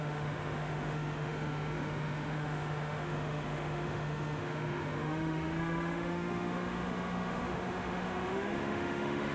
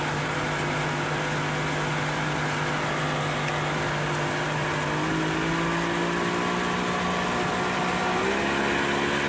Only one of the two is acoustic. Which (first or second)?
second